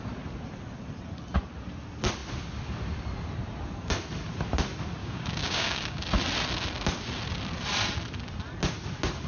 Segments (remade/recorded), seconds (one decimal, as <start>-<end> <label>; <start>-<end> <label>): 0.0-5.0 recorded; 5.0-6.0 remade; 6.0-9.3 recorded